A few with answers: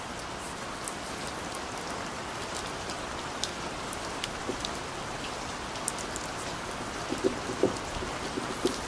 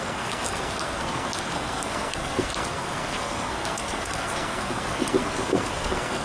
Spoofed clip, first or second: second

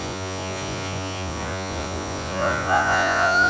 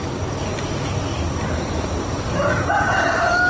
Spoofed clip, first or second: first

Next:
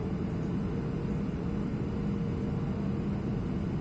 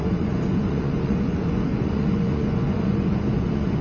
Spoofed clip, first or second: second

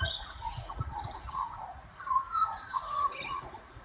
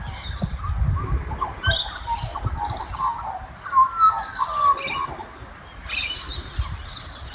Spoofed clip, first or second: first